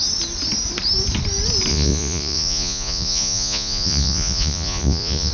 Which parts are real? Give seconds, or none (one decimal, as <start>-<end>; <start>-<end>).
0.0-1.7